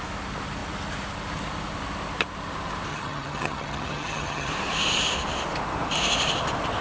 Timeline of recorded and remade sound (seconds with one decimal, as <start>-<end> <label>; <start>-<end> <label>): 0.0-2.9 recorded; 2.9-4.5 remade; 4.5-6.8 recorded